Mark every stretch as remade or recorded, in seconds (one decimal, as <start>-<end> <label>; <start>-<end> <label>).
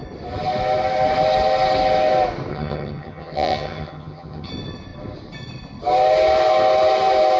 0.0-2.5 recorded; 2.5-4.5 remade; 4.5-7.4 recorded